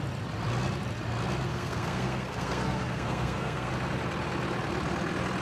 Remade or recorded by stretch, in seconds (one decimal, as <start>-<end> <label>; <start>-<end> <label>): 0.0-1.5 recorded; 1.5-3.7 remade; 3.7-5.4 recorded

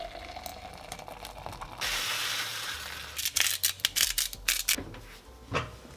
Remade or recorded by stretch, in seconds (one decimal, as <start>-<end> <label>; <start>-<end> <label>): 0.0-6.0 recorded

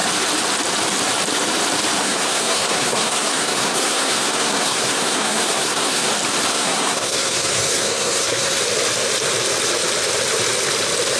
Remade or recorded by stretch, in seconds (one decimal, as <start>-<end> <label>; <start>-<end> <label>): 0.0-2.0 recorded; 2.0-6.1 remade; 6.1-6.5 recorded; 6.5-8.6 remade; 8.6-11.2 recorded

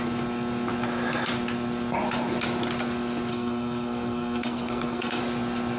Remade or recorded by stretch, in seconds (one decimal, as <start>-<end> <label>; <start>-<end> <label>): 0.0-3.3 recorded; 3.3-5.2 remade; 5.2-5.8 recorded